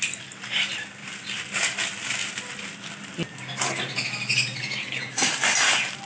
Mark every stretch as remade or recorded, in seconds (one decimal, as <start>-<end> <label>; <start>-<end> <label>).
0.0-6.1 recorded